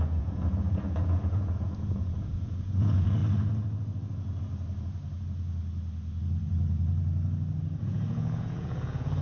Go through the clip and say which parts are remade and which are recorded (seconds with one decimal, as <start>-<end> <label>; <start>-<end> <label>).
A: 0.0-3.2 remade; 3.2-7.8 recorded; 7.8-9.2 remade